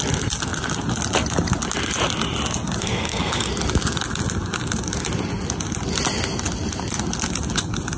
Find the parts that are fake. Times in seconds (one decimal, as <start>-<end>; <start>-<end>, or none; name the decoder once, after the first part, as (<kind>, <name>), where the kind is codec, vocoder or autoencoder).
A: 2.8-3.5 (codec, SNAC)